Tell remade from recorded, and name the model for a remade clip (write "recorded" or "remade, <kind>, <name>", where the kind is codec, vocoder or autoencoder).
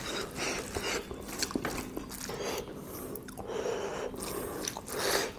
recorded